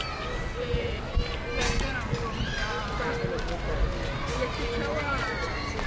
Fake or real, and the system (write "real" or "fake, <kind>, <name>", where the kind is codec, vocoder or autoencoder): real